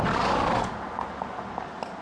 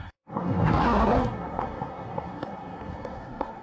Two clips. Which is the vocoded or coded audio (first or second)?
second